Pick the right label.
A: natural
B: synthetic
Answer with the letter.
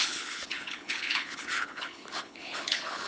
B